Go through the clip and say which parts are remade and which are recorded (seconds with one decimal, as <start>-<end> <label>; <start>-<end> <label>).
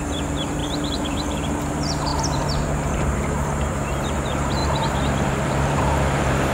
0.0-6.5 remade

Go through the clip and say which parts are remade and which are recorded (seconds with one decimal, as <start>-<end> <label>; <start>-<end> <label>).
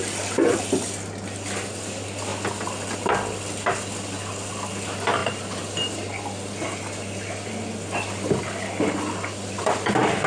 0.0-10.3 recorded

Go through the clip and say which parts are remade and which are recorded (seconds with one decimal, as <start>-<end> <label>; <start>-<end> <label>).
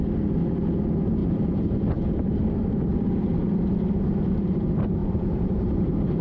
0.0-1.2 recorded; 1.2-3.4 remade; 3.4-5.0 recorded; 5.0-6.2 remade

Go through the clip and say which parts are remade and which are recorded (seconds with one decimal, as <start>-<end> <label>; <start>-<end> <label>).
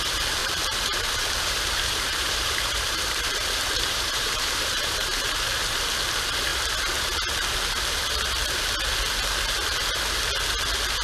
0.0-0.4 recorded; 0.4-5.4 remade; 5.4-11.0 recorded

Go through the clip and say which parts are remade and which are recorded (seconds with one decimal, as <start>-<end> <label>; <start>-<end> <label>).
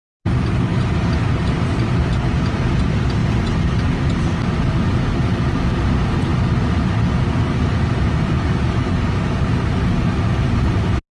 0.0-0.7 recorded; 0.7-2.8 remade; 2.8-11.1 recorded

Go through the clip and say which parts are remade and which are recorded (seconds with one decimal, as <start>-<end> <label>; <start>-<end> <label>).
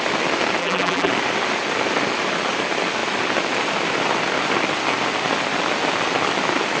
0.0-0.6 recorded; 0.6-1.1 remade; 1.1-6.8 recorded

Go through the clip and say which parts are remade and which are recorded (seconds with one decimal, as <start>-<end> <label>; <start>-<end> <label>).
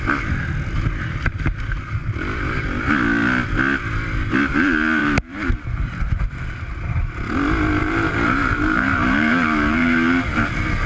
0.0-5.0 recorded; 5.0-6.2 remade; 6.2-7.8 recorded; 7.8-10.5 remade; 10.5-10.9 recorded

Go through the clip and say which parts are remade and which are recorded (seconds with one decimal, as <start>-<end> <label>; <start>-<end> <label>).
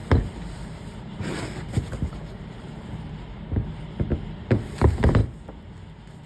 0.0-3.8 remade; 3.8-6.3 recorded